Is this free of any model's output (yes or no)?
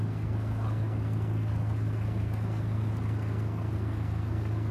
no